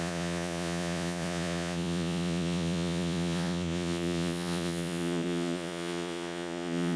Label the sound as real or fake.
fake